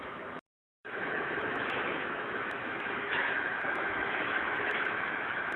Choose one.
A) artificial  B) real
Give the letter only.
A